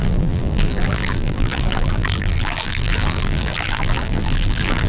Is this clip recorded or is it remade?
remade